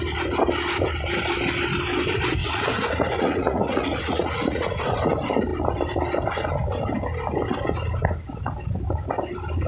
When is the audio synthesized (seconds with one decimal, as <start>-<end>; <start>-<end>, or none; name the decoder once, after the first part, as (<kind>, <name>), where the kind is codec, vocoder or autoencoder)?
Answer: 2.4-4.8 (vocoder, Vocos)